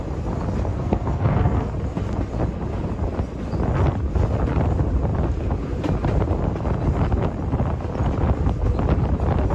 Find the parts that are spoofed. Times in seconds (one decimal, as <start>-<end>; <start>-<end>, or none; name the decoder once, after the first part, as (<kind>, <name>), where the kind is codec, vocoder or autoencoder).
0.7-1.7 (codec, SNAC)